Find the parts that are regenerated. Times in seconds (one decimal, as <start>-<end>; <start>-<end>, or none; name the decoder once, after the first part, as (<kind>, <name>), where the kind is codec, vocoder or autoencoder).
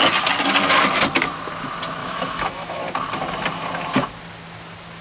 2.0-2.8 (autoencoder, DAC-VAE)